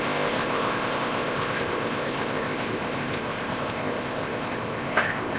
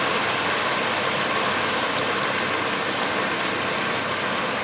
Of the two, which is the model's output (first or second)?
first